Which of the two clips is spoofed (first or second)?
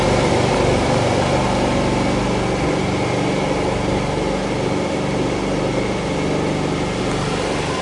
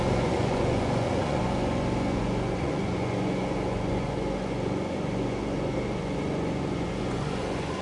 second